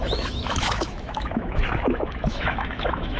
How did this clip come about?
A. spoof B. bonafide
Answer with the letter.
A